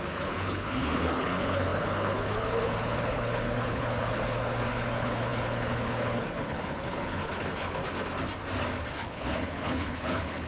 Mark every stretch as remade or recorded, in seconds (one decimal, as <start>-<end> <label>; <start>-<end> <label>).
0.0-7.8 remade; 7.8-8.9 recorded; 8.9-10.5 remade